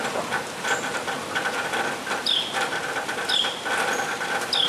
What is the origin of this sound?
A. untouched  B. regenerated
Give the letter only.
B